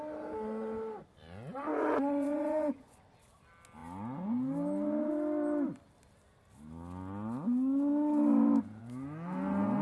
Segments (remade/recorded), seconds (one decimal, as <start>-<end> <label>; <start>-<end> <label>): 0.0-1.7 recorded; 1.7-3.0 remade; 3.0-9.8 recorded